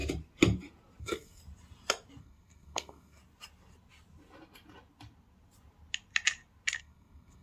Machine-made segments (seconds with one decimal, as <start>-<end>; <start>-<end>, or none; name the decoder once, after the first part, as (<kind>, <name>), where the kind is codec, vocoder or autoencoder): 1.0-1.4 (codec, SNAC); 2.2-3.2; 6.8-7.4